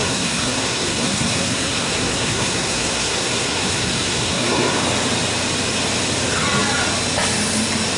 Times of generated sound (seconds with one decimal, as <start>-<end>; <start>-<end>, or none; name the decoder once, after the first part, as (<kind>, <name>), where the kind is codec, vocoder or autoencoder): 0.0-4.8 (codec, SNAC)